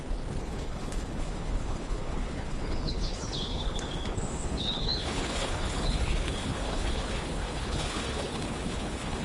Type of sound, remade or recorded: remade